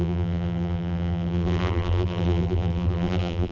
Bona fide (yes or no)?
no